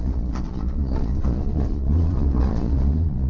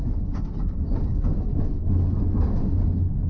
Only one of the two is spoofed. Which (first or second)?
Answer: first